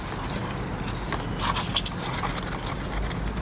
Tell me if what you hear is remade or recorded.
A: recorded